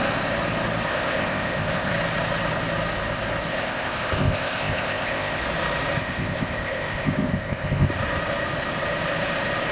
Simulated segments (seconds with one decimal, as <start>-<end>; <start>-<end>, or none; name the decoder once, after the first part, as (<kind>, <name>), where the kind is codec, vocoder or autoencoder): 0.9-1.9 (codec, ZipCodec); 3.5-5.4; 6.0-7.9